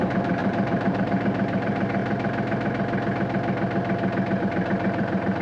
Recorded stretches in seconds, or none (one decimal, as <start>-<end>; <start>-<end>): 2.0-4.4